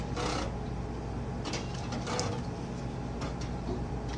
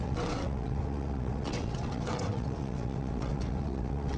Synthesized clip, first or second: second